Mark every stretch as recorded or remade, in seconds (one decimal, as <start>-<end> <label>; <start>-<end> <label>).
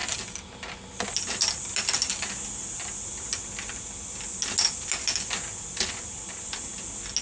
0.0-5.5 recorded; 5.5-6.7 remade; 6.7-7.2 recorded